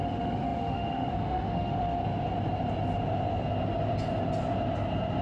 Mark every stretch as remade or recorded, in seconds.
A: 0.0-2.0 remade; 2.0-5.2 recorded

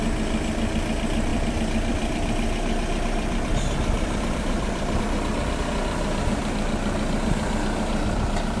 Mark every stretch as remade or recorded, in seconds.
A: 0.0-1.3 recorded; 1.3-5.0 remade; 5.0-8.6 recorded

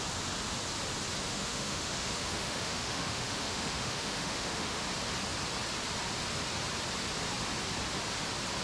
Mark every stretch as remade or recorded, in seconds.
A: 0.0-1.3 recorded; 1.3-4.8 remade; 4.8-8.6 recorded

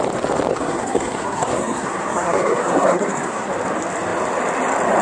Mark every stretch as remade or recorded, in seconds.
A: 0.0-0.5 recorded; 0.5-3.5 remade; 3.5-5.0 recorded

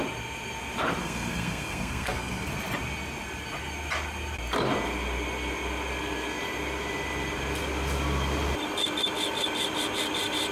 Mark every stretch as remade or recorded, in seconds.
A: 0.0-1.0 recorded; 1.0-2.5 remade; 2.5-10.5 recorded